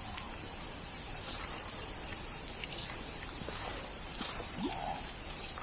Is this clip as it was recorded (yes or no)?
no